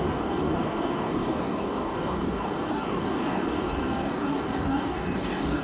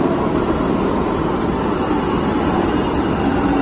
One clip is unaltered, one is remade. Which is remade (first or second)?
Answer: first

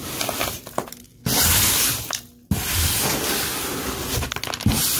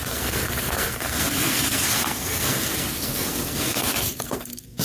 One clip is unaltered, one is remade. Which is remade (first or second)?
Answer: second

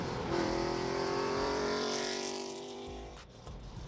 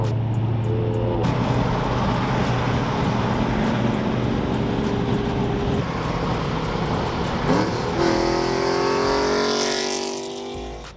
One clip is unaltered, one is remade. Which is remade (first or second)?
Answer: first